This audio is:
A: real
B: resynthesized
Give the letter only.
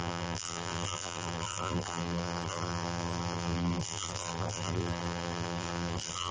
B